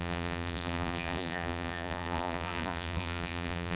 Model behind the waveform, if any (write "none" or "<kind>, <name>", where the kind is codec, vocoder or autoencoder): vocoder, BigVGAN v2